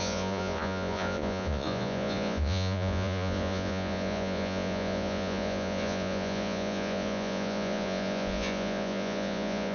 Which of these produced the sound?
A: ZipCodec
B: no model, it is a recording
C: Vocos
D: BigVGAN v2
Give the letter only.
C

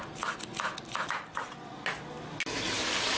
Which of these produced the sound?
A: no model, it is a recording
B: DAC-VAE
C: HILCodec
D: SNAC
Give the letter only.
A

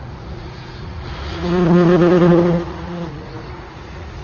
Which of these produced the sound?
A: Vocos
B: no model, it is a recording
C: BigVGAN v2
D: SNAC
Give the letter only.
A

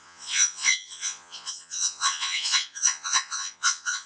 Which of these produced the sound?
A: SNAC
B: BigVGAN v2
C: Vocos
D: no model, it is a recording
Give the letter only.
C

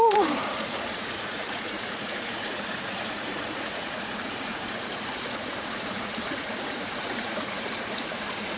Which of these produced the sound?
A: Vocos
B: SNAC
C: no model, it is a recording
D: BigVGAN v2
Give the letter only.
A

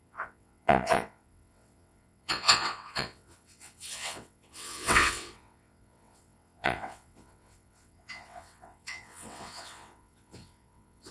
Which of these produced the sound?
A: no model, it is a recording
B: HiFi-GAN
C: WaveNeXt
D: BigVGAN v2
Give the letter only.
C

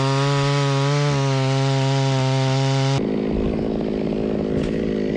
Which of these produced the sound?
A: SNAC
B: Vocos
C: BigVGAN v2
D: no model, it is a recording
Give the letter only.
D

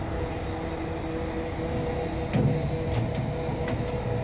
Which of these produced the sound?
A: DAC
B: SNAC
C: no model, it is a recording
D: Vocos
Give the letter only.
C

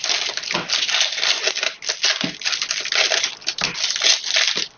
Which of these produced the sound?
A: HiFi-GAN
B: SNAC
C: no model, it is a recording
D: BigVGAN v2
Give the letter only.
C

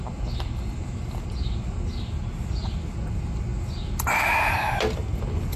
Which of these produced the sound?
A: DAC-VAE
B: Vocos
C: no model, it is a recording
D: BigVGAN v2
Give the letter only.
C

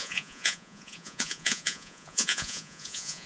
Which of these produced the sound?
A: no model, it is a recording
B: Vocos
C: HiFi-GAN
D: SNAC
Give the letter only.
B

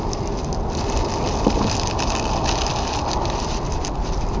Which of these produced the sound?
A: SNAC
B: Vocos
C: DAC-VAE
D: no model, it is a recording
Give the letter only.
D